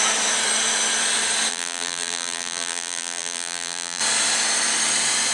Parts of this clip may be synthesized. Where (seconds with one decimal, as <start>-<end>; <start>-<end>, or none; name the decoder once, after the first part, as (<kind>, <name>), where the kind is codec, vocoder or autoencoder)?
1.5-4.0 (vocoder, BigVGAN v2)